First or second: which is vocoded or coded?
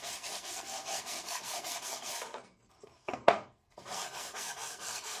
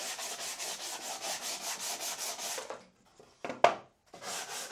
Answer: first